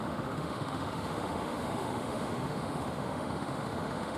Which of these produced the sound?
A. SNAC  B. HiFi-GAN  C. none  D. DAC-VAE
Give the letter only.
D